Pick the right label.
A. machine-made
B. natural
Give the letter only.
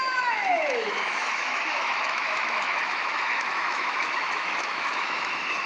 A